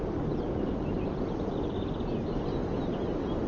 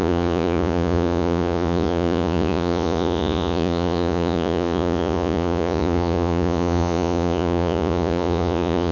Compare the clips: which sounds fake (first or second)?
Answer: second